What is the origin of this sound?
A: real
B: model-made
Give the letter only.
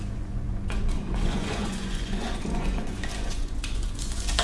B